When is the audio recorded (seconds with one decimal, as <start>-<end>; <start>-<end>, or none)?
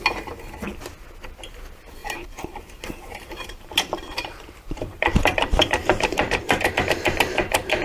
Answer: 0.0-2.0; 6.7-7.8